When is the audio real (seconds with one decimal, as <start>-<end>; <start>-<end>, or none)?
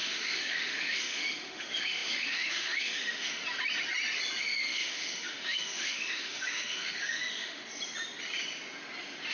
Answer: 3.4-4.4; 7.6-9.3